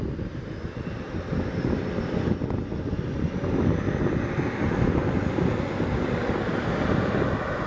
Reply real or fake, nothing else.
real